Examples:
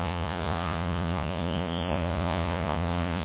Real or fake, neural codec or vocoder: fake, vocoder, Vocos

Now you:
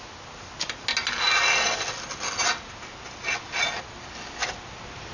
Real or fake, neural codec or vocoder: real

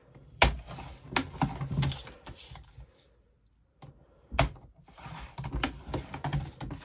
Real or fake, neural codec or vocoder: real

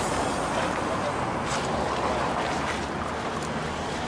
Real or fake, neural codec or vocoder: real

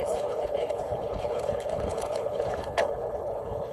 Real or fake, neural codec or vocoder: fake, codec, HILCodec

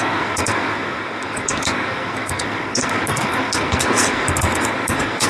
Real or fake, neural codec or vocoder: fake, codec, SNAC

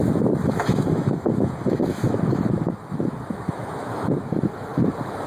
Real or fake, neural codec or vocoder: fake, autoencoder, DAC-VAE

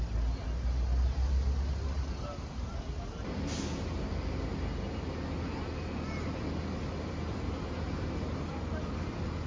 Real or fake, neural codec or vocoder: real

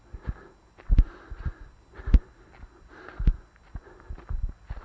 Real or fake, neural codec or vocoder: real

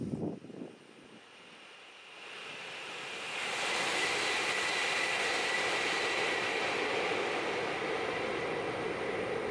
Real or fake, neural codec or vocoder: real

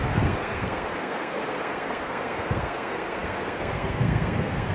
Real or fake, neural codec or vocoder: fake, codec, SNAC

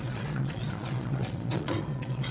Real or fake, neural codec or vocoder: fake, vocoder, Vocos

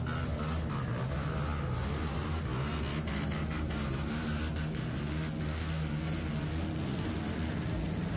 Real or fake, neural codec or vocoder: real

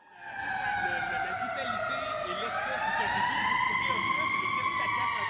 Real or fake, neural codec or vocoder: real